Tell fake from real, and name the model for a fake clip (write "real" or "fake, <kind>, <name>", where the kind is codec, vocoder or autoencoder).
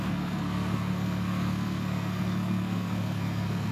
fake, codec, SNAC